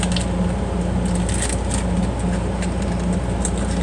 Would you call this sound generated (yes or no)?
no